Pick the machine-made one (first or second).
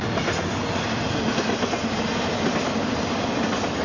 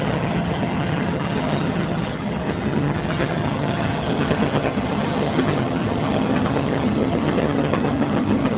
second